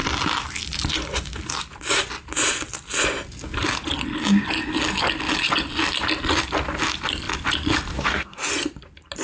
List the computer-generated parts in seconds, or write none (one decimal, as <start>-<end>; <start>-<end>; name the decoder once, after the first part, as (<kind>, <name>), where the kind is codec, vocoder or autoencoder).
7.9-8.5 (codec, DAC)